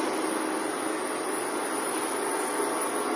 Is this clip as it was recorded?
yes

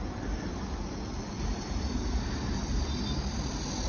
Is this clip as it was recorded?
yes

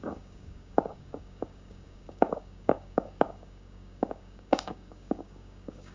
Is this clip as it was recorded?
no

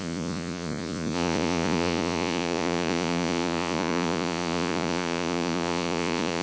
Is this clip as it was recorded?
no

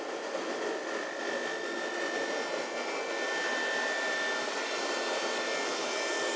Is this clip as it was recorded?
yes